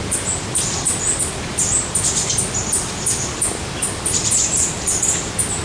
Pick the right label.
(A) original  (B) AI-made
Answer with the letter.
A